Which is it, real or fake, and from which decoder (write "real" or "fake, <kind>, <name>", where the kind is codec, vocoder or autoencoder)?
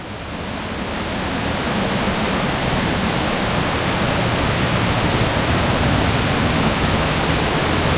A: real